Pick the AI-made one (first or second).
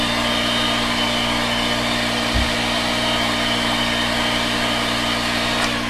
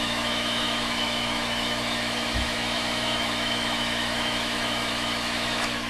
second